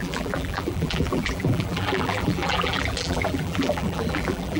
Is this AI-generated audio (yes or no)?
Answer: yes